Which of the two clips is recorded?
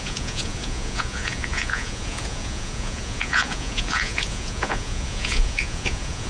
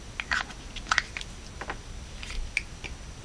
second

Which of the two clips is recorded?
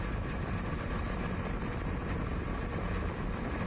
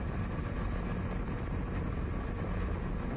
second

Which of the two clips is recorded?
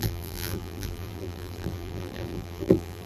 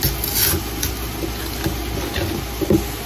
second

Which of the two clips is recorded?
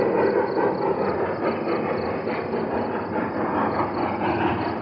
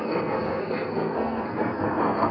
first